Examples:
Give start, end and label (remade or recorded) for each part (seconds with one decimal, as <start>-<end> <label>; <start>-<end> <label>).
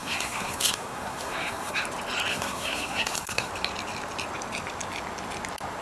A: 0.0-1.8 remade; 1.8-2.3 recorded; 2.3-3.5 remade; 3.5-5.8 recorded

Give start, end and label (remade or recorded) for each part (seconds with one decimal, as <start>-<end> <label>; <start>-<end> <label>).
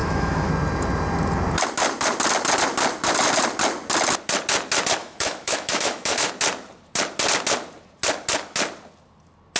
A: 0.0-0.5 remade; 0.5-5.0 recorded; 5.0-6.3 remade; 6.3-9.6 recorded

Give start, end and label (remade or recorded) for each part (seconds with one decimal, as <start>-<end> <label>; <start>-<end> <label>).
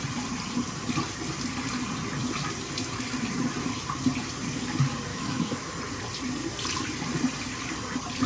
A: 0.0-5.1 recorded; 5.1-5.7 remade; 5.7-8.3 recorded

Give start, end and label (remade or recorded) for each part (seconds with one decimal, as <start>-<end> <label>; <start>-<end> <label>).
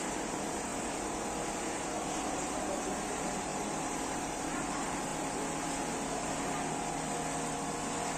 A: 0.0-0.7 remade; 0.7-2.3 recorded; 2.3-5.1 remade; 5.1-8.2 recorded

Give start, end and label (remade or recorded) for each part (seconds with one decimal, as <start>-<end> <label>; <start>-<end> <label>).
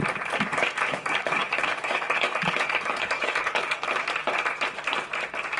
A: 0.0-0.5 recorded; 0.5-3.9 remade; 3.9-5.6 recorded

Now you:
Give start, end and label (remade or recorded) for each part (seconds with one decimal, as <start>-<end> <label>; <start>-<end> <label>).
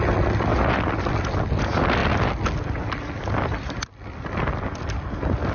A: 0.0-5.5 recorded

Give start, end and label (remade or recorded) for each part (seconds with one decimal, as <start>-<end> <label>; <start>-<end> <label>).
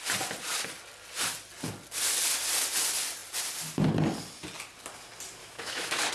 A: 0.0-5.4 recorded; 5.4-6.1 remade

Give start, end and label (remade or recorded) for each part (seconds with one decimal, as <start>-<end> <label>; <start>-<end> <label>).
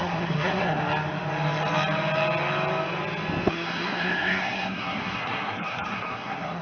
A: 0.0-0.8 remade; 0.8-3.5 recorded; 3.5-6.6 remade